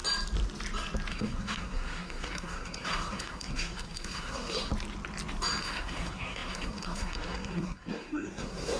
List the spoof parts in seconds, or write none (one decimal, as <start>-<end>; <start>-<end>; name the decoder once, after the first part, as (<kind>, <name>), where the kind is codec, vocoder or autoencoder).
1.1-4.7 (codec, SNAC); 5.6-8.8